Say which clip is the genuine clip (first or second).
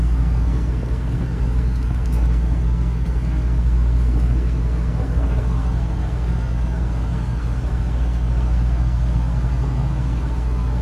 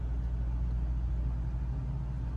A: second